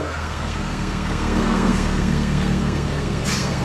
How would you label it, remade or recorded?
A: remade